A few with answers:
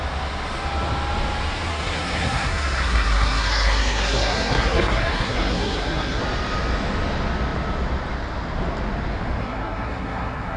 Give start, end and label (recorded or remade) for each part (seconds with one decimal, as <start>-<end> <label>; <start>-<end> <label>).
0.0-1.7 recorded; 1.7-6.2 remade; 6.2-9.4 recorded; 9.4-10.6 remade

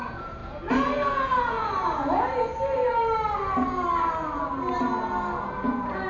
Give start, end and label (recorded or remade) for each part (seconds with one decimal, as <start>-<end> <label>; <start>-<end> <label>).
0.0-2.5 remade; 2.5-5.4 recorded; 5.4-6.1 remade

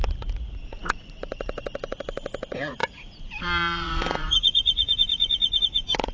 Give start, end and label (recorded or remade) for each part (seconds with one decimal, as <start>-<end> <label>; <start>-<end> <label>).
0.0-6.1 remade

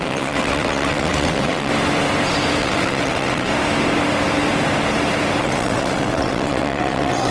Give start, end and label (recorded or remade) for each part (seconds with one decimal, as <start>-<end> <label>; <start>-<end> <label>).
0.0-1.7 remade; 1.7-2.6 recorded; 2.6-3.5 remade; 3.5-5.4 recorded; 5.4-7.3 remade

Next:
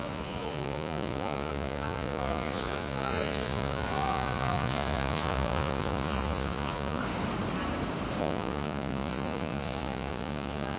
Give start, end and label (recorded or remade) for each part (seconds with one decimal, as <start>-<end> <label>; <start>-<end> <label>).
0.0-7.0 remade; 7.0-8.2 recorded; 8.2-10.8 remade